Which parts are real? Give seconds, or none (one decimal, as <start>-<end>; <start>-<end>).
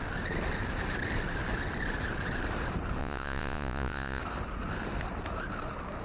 0.0-3.0; 4.2-6.0